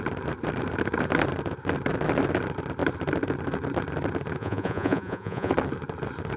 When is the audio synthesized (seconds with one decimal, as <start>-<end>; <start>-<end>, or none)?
4.4-5.5